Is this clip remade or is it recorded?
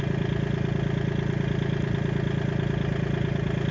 recorded